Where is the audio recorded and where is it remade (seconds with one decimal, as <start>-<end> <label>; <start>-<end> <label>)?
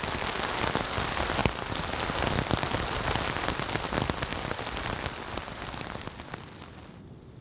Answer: 0.0-7.4 recorded